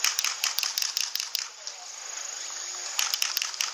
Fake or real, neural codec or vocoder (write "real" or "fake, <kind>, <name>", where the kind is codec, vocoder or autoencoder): real